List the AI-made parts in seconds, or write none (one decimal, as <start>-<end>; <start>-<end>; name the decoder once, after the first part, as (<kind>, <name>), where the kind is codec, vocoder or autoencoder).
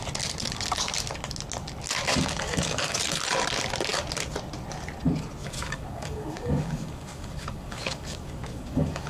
2.1-3.0 (codec, DAC); 5.4-9.1